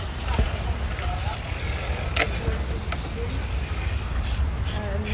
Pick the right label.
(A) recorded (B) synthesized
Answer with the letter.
A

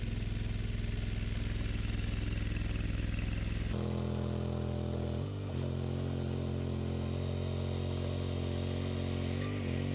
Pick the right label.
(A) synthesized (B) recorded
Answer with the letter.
B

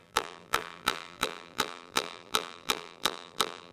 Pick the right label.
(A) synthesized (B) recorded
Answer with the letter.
A